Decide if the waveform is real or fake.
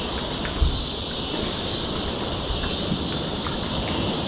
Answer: real